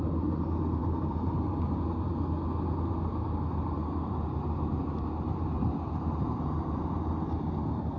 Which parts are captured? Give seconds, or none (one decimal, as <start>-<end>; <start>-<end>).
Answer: 0.0-0.8; 2.2-3.8; 6.8-8.0